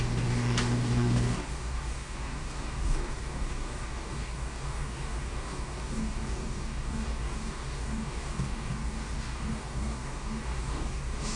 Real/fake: fake